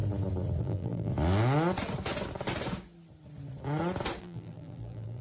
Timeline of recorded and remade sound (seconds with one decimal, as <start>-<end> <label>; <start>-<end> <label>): 0.0-0.6 recorded; 0.6-1.1 remade; 1.1-4.2 recorded; 4.2-5.2 remade

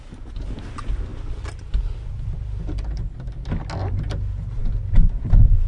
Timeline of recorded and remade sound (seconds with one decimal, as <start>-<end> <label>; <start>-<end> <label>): 0.0-1.1 recorded; 1.1-3.5 remade; 3.5-4.6 recorded; 4.6-5.7 remade

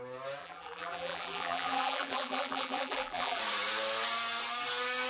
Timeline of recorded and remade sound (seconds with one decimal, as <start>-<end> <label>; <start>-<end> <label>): 0.0-0.4 recorded; 0.4-3.4 remade; 3.4-5.1 recorded

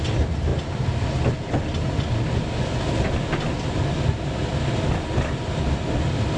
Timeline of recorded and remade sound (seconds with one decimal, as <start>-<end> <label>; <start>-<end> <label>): 0.0-0.5 recorded; 0.5-1.1 remade; 1.1-6.4 recorded

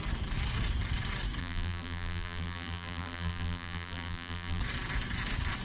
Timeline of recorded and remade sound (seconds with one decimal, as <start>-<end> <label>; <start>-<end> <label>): 0.0-1.4 recorded; 1.4-4.6 remade; 4.6-5.6 recorded